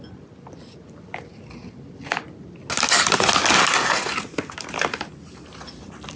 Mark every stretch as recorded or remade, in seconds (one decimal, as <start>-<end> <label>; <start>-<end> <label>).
0.0-6.2 recorded